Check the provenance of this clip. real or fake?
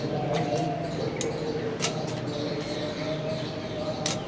real